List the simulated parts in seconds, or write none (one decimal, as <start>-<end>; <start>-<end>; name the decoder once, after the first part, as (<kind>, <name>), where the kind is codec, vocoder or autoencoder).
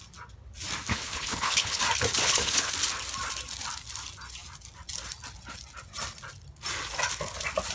0.9-1.8 (codec, HILCodec); 2.2-2.7